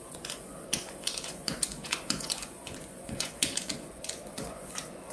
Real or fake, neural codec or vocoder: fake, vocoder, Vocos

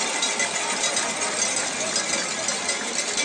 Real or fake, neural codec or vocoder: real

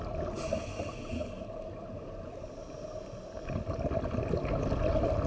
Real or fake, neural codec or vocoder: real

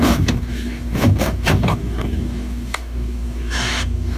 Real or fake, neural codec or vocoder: fake, codec, DAC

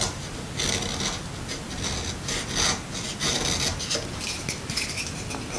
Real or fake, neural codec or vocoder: real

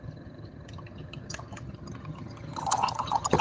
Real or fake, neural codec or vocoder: fake, vocoder, HiFi-GAN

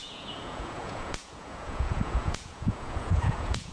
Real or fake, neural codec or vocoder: fake, vocoder, Vocos